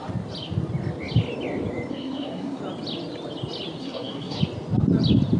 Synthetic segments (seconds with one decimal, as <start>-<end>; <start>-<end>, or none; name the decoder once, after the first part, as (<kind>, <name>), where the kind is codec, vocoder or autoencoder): 1.9-2.6 (codec, SNAC); 3.8-4.4